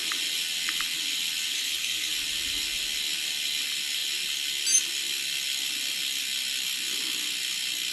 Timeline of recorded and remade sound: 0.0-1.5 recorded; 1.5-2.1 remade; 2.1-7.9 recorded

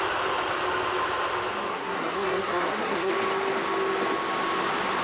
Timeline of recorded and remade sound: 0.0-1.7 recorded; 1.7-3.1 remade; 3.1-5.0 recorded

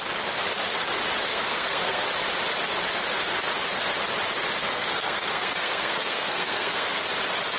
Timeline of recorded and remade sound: 0.0-1.3 recorded; 1.3-2.0 remade; 2.0-4.6 recorded; 4.6-7.0 remade; 7.0-7.6 recorded

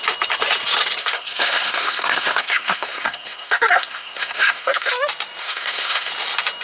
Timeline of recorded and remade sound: 0.0-1.0 recorded; 1.0-4.9 remade; 4.9-5.4 recorded; 5.4-6.1 remade; 6.1-6.6 recorded

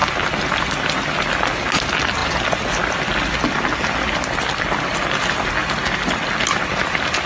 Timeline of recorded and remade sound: 0.0-7.3 recorded

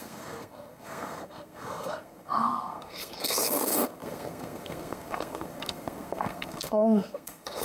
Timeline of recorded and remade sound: 0.0-7.6 remade

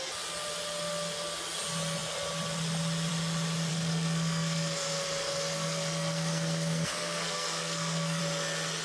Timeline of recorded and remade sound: 0.0-3.7 recorded; 3.7-8.2 remade; 8.2-8.8 recorded

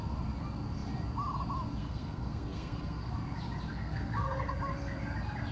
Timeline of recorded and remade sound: 0.0-1.8 recorded; 1.8-3.1 remade; 3.1-3.7 recorded; 3.7-4.6 remade; 4.6-5.5 recorded